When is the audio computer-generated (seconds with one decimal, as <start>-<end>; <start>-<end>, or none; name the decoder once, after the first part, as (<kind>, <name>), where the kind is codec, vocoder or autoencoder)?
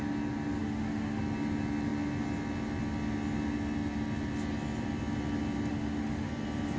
0.6-1.2 (autoencoder, DAC-VAE); 5.7-6.3